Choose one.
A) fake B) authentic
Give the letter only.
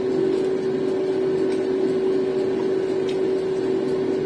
B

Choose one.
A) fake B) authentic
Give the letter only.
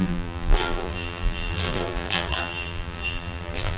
A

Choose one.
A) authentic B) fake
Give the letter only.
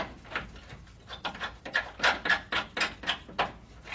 A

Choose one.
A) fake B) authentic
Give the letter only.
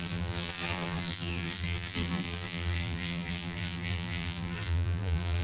A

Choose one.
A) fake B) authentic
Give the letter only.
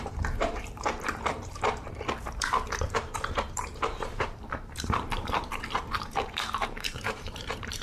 A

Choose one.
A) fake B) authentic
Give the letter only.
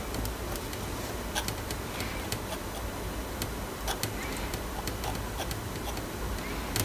B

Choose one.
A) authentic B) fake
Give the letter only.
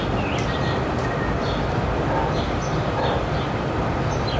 B